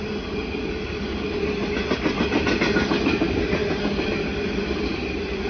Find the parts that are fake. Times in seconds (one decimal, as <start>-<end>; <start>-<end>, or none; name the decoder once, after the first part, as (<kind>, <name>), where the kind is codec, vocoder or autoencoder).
none

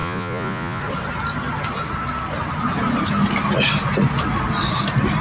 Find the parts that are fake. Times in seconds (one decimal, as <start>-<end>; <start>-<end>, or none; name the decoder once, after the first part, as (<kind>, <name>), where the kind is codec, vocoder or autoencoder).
0.0-0.8 (vocoder, Vocos)

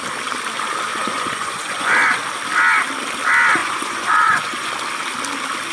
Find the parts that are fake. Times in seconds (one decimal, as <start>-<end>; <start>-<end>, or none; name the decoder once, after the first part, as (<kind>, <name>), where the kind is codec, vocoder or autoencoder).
0.9-1.9 (vocoder, Vocos); 3.6-4.7

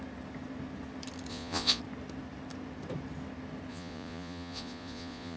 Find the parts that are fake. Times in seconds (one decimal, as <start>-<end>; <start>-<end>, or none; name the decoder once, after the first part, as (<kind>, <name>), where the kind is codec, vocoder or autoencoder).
1.3-1.8 (vocoder, Vocos); 3.7-5.4

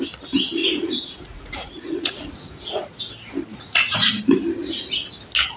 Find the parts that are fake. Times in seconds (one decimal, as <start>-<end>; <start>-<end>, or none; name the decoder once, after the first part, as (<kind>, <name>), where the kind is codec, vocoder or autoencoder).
0.6-3.0 (vocoder, Vocos); 3.5-4.2

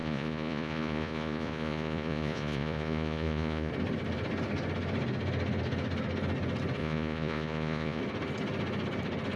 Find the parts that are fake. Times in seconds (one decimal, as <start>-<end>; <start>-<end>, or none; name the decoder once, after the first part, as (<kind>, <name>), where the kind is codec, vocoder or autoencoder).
0.0-3.7 (vocoder, Vocos); 6.8-8.0